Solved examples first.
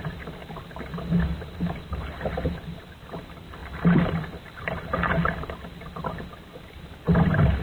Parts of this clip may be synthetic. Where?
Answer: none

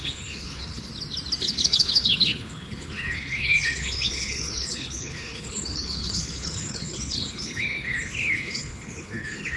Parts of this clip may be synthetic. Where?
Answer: 0.0-0.9 (codec, HILCodec); 1.4-9.6

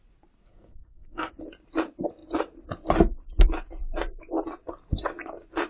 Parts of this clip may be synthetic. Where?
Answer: 0.4-1.3 (codec, SNAC)

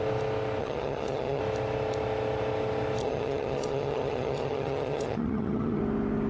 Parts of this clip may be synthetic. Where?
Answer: 0.6-1.4 (vocoder, HiFi-GAN); 3.0-5.8

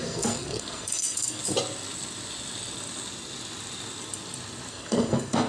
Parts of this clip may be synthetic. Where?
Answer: 0.0-1.4 (codec, SNAC); 4.7-5.5

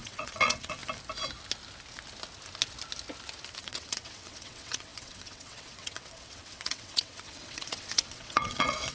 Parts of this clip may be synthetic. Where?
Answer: 0.0-0.8 (vocoder, WaveNeXt); 3.6-8.9

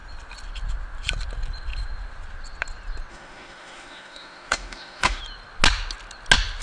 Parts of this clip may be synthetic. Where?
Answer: 3.1-5.2 (autoencoder, DAC-VAE)

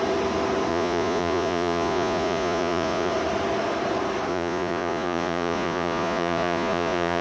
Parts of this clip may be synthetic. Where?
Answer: 0.7-3.1 (vocoder, Vocos); 4.3-7.2